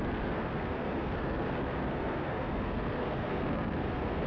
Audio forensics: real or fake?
fake